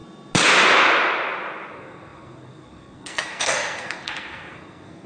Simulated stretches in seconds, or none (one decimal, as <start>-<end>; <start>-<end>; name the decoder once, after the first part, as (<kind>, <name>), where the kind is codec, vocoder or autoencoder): 1.7-5.1 (codec, SNAC)